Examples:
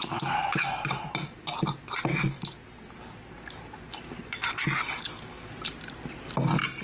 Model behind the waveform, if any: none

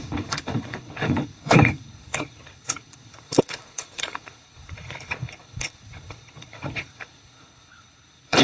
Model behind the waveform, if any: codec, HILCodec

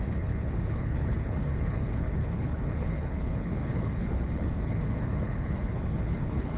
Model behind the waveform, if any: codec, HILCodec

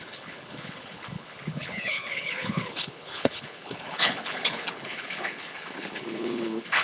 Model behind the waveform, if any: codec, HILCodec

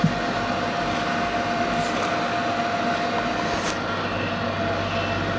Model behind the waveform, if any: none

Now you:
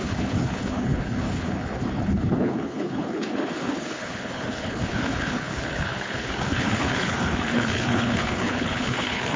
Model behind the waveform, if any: codec, HILCodec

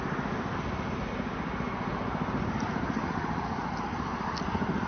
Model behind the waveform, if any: none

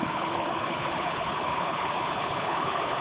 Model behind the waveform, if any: codec, HILCodec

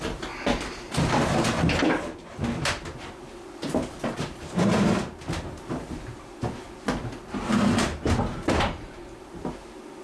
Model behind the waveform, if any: none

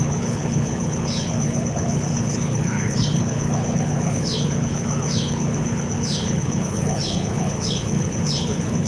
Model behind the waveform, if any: codec, HILCodec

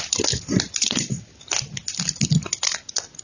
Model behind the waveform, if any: none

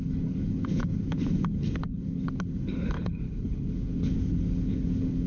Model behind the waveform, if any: codec, HILCodec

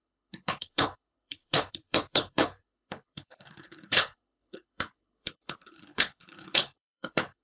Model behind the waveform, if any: codec, HILCodec